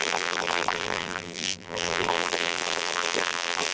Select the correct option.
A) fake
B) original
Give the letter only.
A